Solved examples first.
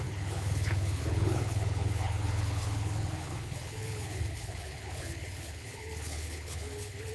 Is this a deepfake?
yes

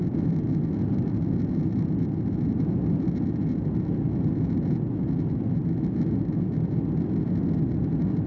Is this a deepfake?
no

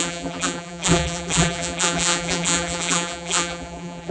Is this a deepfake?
yes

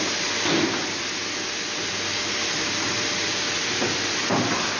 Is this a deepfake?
no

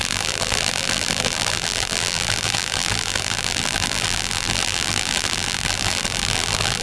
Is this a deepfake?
yes